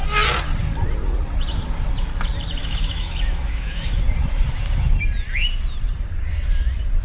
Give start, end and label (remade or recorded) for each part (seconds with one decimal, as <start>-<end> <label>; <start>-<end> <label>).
0.0-2.6 recorded; 2.6-4.0 remade; 4.0-7.0 recorded